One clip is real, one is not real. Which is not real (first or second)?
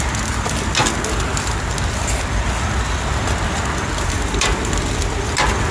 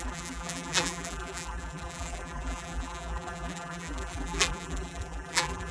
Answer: second